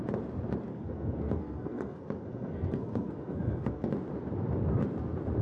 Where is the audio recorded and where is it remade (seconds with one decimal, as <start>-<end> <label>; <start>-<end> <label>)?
0.0-0.7 recorded; 0.7-3.9 remade; 3.9-5.4 recorded